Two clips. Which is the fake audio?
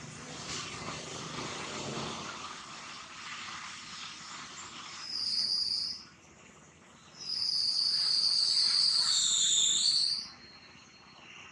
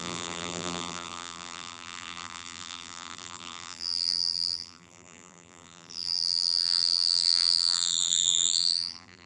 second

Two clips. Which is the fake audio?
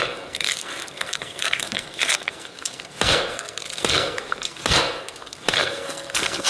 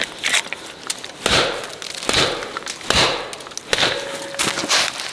first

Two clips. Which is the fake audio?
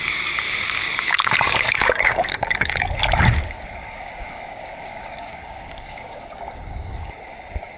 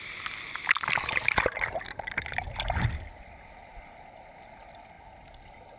first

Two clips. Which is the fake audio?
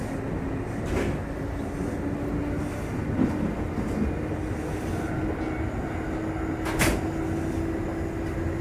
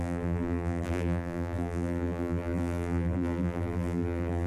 second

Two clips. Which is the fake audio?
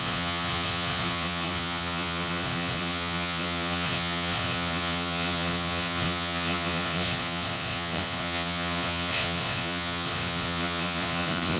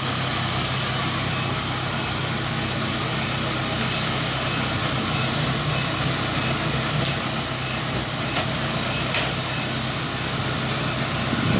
first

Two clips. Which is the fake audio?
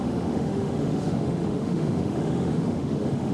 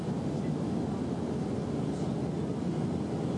first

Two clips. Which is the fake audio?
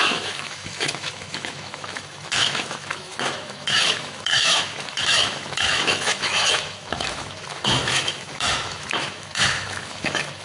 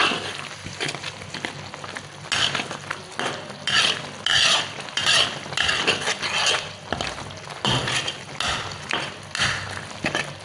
first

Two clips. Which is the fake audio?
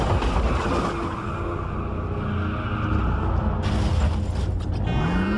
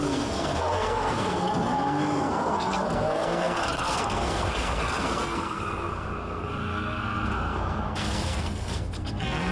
second